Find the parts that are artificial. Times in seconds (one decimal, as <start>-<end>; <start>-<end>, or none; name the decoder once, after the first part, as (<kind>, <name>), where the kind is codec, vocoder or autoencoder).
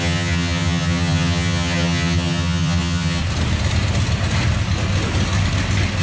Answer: 0.0-3.2 (vocoder, HiFi-GAN)